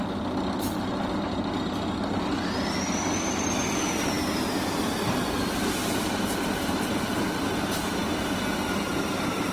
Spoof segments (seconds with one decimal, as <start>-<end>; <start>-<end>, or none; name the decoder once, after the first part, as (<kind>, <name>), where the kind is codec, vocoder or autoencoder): none

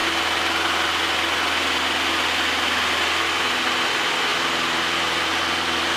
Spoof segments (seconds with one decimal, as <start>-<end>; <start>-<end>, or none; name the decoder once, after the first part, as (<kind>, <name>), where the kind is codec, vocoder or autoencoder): 3.6-6.0 (vocoder, BigVGAN v2)

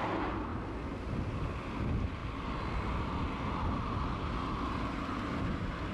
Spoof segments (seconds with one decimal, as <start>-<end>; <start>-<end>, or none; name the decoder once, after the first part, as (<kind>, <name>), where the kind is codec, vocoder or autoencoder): none